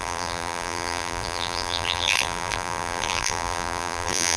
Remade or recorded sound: remade